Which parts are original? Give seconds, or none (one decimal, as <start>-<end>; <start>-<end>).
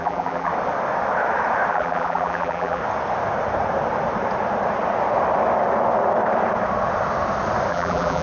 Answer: 0.5-1.7; 2.8-7.7